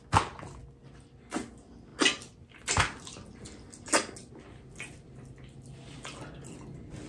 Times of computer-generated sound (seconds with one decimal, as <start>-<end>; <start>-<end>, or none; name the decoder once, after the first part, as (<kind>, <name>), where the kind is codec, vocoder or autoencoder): none